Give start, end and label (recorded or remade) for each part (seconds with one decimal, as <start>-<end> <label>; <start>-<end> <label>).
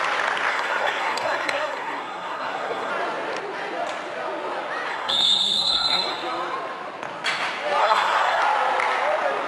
0.0-0.5 recorded; 0.5-2.9 remade; 2.9-4.9 recorded; 4.9-6.1 remade; 6.1-7.8 recorded; 7.8-8.4 remade; 8.4-9.5 recorded